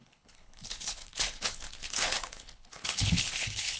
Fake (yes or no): yes